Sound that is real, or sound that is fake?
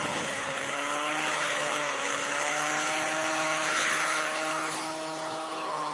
fake